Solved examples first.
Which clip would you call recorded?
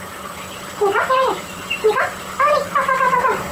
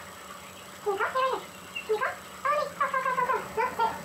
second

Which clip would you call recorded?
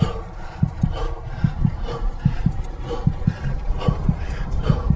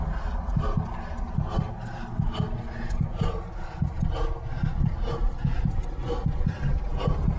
second